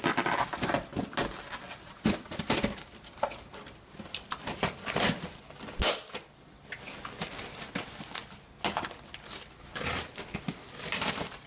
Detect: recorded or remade recorded